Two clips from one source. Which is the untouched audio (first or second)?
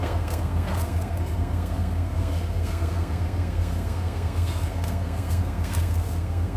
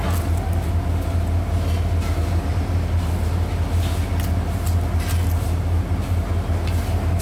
second